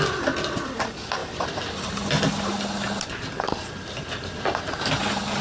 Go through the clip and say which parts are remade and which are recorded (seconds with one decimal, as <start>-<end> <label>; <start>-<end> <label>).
0.0-5.4 recorded